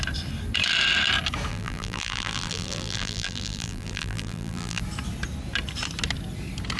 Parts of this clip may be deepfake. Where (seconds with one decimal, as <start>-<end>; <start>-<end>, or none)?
1.5-4.8